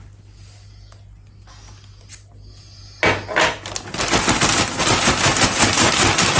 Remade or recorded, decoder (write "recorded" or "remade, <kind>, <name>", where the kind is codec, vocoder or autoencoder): recorded